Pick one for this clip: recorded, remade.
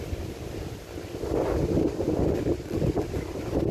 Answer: recorded